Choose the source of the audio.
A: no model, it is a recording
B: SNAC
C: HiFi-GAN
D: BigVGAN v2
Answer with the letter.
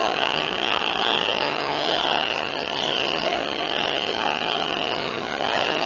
C